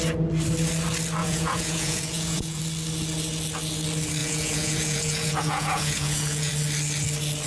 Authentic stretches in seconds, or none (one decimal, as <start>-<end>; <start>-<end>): 0.0-1.2; 2.6-4.2; 6.5-7.5